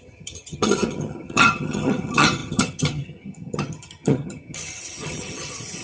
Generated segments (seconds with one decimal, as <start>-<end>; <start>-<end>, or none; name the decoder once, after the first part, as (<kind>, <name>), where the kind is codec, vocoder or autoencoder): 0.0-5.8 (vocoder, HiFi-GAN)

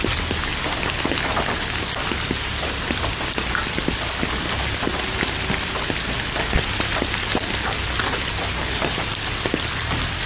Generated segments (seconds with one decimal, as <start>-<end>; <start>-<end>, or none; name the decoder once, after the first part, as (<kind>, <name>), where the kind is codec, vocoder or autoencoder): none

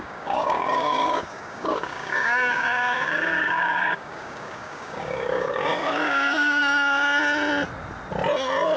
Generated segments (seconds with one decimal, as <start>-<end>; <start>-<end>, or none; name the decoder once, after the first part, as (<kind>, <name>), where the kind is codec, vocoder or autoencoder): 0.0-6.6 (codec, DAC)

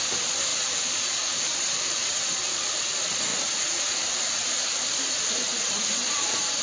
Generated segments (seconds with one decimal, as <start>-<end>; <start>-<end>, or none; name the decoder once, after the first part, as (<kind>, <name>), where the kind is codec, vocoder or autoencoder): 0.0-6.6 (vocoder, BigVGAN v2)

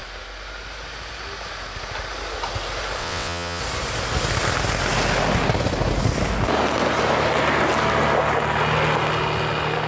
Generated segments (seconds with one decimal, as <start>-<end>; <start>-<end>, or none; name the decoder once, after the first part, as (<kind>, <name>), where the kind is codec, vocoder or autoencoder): 3.0-3.6 (vocoder, WaveNeXt)

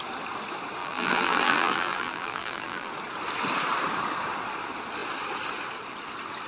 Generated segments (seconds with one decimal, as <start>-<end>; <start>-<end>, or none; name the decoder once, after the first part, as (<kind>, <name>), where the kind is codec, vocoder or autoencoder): 0.8-2.9 (vocoder, BigVGAN v2)

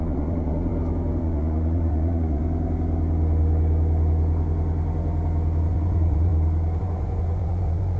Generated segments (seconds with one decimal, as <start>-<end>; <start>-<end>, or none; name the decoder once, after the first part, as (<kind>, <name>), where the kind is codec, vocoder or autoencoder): 0.0-0.7 (vocoder, Vocos); 1.2-2.4; 5.6-6.3; 6.8-8.0

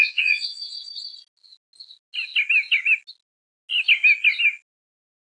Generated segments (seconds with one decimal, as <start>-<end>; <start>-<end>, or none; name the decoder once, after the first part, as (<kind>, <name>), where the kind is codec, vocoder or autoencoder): 0.0-0.8 (vocoder, Vocos)